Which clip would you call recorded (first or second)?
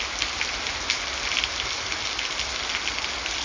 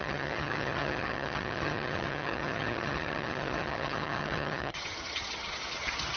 first